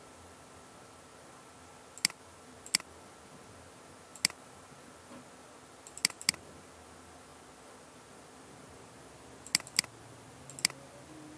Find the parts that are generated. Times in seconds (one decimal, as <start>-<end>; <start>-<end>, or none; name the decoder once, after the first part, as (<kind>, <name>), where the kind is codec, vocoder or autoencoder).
none